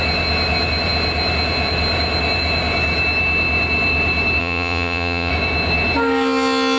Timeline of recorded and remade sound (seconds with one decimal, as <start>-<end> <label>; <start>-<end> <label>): 0.0-4.4 recorded; 4.4-5.3 remade; 5.3-6.8 recorded